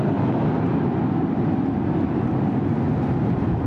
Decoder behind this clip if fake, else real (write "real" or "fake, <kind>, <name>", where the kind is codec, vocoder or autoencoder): real